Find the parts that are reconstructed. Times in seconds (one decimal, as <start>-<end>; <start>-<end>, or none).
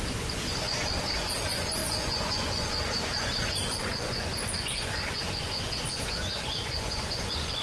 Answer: 0.0-7.6